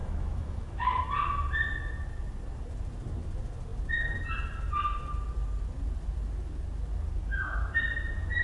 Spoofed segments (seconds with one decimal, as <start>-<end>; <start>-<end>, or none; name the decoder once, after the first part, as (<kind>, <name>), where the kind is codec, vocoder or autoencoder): 0.0-1.0 (autoencoder, DAC-VAE); 7.2-7.7